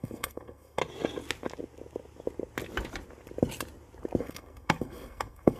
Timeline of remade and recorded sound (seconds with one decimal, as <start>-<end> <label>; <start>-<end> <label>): 0.0-0.8 remade; 0.8-4.2 recorded; 4.2-5.6 remade